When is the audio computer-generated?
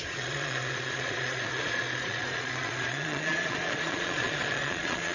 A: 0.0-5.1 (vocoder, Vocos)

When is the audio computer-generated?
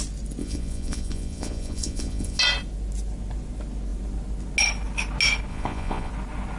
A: 0.4-2.4 (vocoder, Vocos); 5.5-6.1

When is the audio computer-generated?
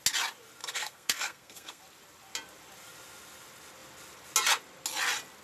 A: 0.6-1.8 (codec, SNAC)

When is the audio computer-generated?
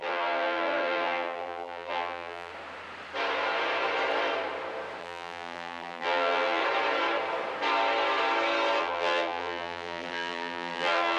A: 0.0-2.5 (vocoder, BigVGAN v2); 5.0-6.6; 8.8-11.2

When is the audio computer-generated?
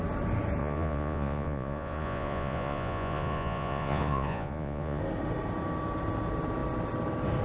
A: 0.6-5.0 (vocoder, Vocos)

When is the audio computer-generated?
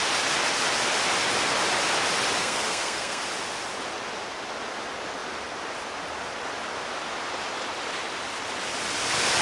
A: 2.4-3.2 (codec, SNAC)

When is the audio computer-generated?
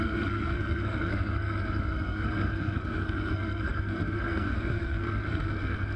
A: 0.0-6.0 (codec, SNAC)